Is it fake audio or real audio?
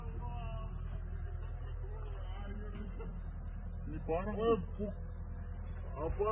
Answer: real